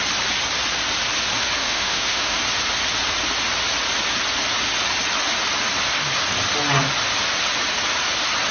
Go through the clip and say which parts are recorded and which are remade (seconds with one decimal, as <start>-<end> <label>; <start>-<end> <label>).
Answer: 0.0-1.6 recorded; 1.6-2.4 remade; 2.4-8.5 recorded

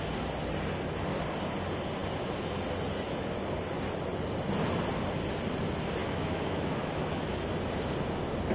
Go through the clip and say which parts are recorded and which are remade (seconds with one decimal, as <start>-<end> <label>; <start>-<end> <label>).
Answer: 0.0-6.0 recorded; 6.0-7.4 remade; 7.4-8.5 recorded

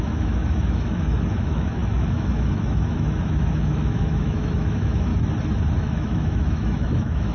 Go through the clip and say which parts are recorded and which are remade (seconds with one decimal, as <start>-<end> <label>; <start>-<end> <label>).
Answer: 0.0-5.1 remade; 5.1-5.8 recorded; 5.8-7.3 remade

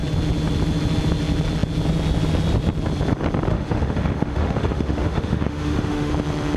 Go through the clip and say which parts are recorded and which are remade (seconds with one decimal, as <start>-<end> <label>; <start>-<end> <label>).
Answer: 0.0-3.5 recorded; 3.5-6.1 remade; 6.1-6.6 recorded

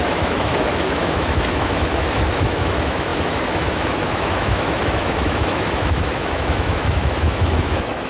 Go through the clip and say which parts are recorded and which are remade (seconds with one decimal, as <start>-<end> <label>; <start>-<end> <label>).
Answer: 0.0-8.1 remade

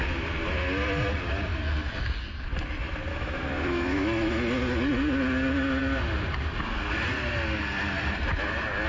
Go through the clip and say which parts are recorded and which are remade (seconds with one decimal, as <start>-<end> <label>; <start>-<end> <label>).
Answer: 0.0-3.1 recorded; 3.1-4.3 remade; 4.3-8.9 recorded